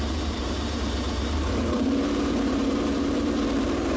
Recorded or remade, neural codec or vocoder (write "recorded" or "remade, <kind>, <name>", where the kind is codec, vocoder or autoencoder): remade, vocoder, BigVGAN v2